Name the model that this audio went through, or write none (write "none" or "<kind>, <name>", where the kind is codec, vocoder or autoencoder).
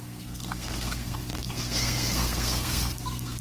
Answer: codec, SNAC